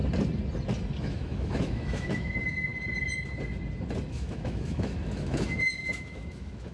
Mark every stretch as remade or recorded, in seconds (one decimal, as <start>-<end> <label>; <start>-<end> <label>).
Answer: 0.0-1.0 recorded; 1.0-2.7 remade; 2.7-4.1 recorded; 4.1-6.7 remade